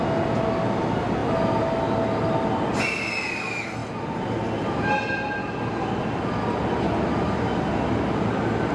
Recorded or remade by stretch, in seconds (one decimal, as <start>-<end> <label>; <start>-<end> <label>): 0.0-8.7 recorded